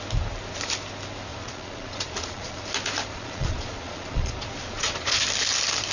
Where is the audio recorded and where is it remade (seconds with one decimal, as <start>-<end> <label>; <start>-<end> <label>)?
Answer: 0.0-1.3 recorded; 1.3-2.6 remade; 2.6-3.1 recorded; 3.1-5.2 remade; 5.2-5.9 recorded